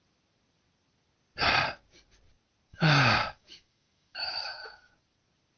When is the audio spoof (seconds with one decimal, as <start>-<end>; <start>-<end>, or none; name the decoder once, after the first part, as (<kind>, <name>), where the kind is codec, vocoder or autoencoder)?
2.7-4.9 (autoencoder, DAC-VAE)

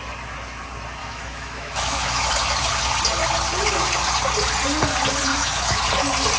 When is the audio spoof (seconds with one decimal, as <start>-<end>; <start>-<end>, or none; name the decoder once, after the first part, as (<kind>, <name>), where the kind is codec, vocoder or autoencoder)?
1.0-2.3 (autoencoder, DAC-VAE); 5.3-5.8

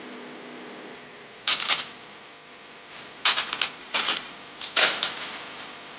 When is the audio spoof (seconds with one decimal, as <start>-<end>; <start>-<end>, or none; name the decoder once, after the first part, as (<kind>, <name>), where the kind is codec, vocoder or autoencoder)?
3.8-4.3 (autoencoder, DAC-VAE)

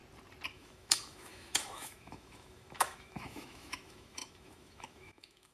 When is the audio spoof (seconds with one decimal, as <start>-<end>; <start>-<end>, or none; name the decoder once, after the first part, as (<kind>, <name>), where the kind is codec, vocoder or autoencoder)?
0.5-5.5 (autoencoder, DAC-VAE)

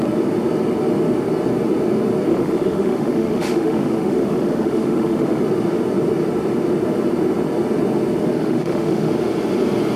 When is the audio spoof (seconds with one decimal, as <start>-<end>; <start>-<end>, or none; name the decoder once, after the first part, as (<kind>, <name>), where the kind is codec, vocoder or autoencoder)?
2.3-5.4 (autoencoder, DAC-VAE); 8.3-9.1